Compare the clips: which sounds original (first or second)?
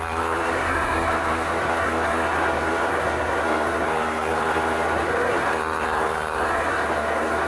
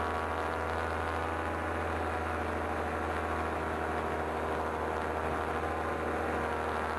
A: second